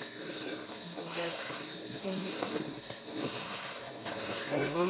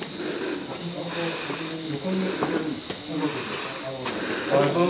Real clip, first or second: second